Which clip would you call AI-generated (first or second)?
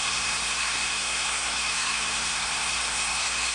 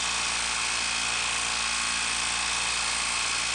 first